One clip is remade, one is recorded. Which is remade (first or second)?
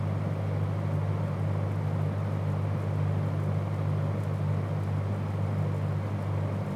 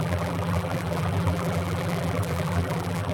second